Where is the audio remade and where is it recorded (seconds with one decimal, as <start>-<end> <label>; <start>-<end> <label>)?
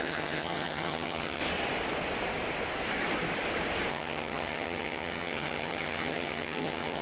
0.0-1.4 remade; 1.4-3.9 recorded; 3.9-7.0 remade